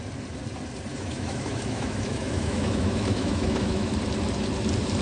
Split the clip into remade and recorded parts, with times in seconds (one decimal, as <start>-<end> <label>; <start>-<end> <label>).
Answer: 0.0-0.9 recorded; 0.9-3.9 remade; 3.9-5.0 recorded